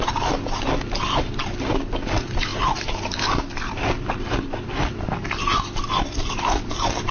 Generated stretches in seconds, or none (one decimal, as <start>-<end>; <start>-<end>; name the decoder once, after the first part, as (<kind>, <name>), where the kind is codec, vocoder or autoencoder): none